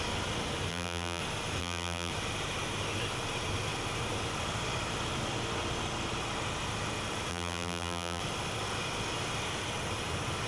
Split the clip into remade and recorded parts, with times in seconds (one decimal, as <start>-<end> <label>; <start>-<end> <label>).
0.0-0.7 recorded; 0.7-1.2 remade; 1.2-1.6 recorded; 1.6-2.1 remade; 2.1-7.3 recorded; 7.3-8.2 remade; 8.2-10.5 recorded